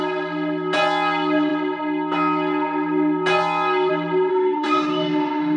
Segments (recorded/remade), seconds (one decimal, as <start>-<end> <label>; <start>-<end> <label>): 0.0-4.3 recorded; 4.3-5.6 remade